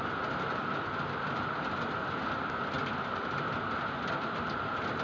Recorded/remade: recorded